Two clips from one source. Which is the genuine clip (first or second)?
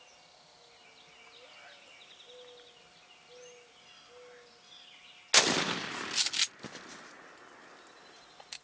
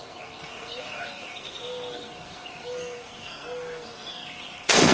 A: first